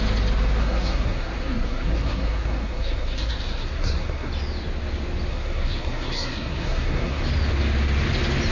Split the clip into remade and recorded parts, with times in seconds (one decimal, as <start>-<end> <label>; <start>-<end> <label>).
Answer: 0.0-0.6 recorded; 0.6-4.3 remade; 4.3-5.3 recorded; 5.3-7.2 remade; 7.2-8.5 recorded